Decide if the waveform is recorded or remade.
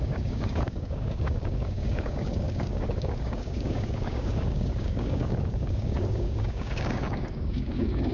remade